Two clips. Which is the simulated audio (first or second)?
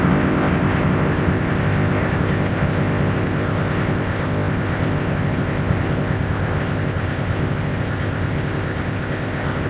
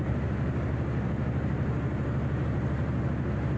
first